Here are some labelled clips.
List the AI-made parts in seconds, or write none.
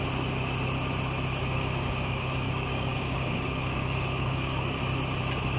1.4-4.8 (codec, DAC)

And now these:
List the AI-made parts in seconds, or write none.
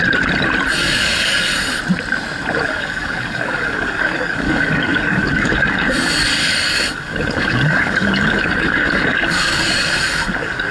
0.8-1.5 (codec, DAC); 2.7-10.7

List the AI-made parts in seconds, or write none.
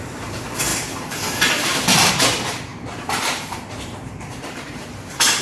0.7-2.1 (vocoder, BigVGAN v2); 2.7-4.9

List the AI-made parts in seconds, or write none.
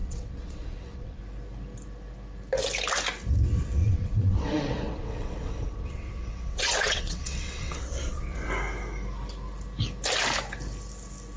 0.0-1.2 (vocoder, WaveNeXt); 3.8-8.5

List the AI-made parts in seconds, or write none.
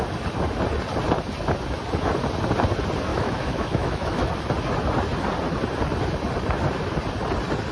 3.1-4.3 (autoencoder, DAC-VAE)